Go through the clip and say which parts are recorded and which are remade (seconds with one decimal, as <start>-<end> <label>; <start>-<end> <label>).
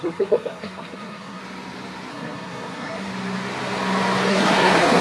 0.0-1.4 remade; 1.4-2.1 recorded; 2.1-3.1 remade; 3.1-4.3 recorded; 4.3-5.0 remade